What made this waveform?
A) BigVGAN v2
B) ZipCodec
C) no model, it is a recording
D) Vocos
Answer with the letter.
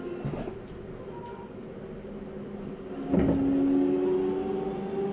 C